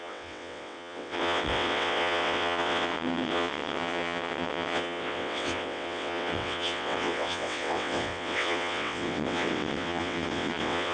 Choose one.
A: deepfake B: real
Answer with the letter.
A